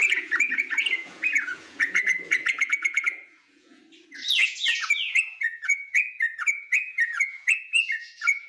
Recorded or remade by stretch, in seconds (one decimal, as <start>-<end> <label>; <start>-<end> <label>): 0.0-3.8 remade; 3.8-4.4 recorded; 4.4-8.5 remade